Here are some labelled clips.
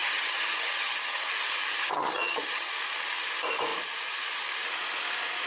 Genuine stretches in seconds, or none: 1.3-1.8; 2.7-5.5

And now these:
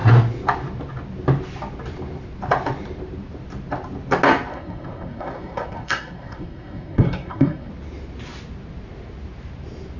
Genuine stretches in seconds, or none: 0.0-4.5; 7.7-10.0

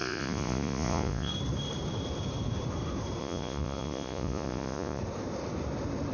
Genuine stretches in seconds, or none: 1.3-3.2; 5.0-6.1